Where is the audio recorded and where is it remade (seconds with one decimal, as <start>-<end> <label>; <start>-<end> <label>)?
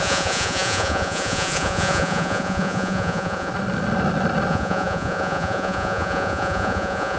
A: 0.0-3.5 remade; 3.5-4.5 recorded; 4.5-7.2 remade